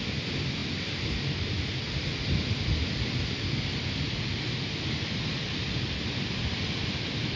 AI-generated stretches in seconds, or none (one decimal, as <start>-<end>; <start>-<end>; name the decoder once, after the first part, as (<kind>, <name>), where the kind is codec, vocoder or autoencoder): none